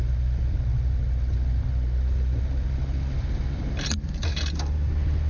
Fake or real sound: real